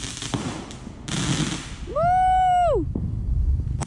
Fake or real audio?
real